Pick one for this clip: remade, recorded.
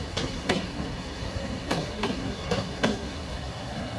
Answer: remade